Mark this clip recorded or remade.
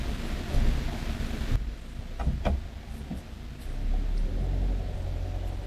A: recorded